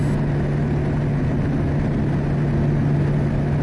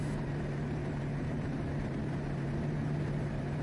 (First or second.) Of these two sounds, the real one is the first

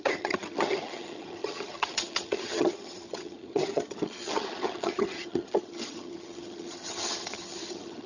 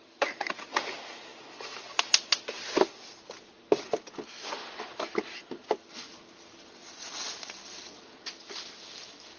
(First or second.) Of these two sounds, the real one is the second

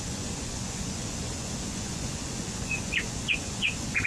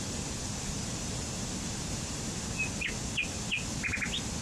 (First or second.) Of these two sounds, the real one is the second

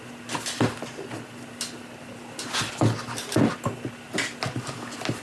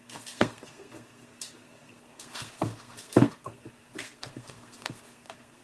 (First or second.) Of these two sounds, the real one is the first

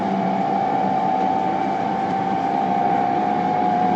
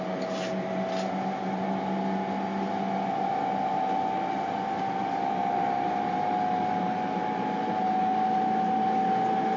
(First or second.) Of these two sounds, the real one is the second